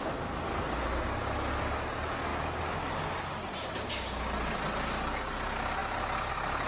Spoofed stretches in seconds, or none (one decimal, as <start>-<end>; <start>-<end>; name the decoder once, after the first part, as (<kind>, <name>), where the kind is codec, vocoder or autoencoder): none